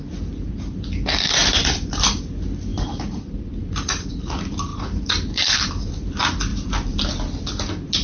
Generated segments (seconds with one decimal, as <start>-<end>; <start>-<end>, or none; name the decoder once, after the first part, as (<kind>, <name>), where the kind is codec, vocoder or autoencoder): 2.7-4.1 (vocoder, BigVGAN v2); 4.7-5.7

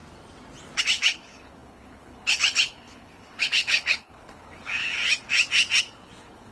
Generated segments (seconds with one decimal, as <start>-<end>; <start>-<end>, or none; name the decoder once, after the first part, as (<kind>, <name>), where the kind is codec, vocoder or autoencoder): 0.8-5.0 (codec, HILCodec); 5.8-6.5

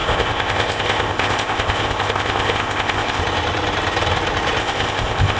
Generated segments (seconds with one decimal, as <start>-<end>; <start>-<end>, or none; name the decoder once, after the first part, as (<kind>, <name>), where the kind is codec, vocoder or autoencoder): 0.0-3.2 (codec, ZipCodec); 4.6-5.4

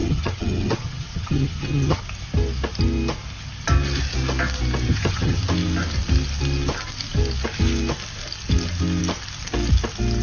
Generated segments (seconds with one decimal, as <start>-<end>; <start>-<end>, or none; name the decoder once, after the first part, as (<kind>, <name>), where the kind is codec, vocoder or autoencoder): 0.0-2.0 (vocoder, HiFi-GAN); 4.9-5.4

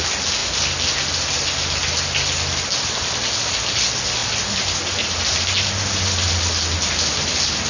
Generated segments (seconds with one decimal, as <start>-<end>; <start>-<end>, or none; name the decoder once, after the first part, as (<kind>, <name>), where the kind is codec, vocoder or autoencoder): none

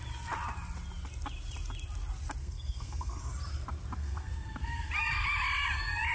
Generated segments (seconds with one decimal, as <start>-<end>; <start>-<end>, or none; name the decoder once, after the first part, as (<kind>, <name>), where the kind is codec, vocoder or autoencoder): 2.4-3.2 (codec, SNAC); 4.0-4.9

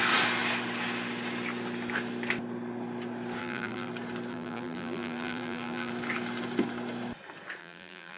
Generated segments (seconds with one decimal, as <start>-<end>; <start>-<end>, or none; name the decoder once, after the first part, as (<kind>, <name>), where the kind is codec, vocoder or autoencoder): 3.4-3.9 (vocoder, BigVGAN v2); 4.3-5.9; 7.6-8.2

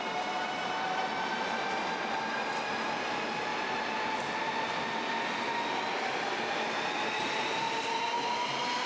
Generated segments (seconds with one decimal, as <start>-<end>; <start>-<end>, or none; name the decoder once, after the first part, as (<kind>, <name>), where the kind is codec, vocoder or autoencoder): 1.1-1.7 (vocoder, BigVGAN v2); 3.5-4.0